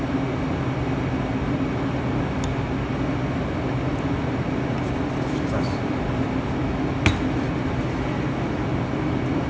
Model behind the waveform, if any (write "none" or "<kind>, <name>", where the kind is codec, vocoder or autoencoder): none